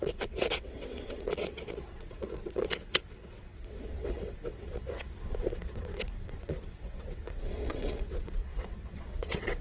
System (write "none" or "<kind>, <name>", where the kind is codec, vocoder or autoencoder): vocoder, WaveNeXt